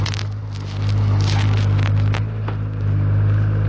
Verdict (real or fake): real